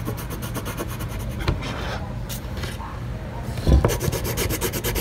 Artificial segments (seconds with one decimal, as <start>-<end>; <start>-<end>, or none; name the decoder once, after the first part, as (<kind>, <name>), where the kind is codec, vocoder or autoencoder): none